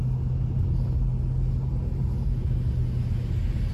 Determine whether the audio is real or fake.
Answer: real